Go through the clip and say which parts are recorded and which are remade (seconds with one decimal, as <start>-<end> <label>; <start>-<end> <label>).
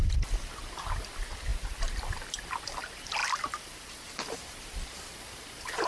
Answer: 0.0-5.9 recorded